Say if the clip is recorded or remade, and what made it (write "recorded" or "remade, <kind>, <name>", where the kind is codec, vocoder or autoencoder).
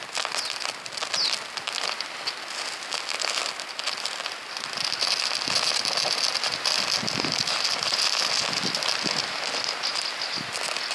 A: recorded